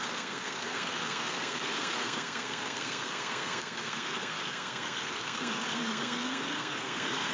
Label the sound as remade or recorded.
remade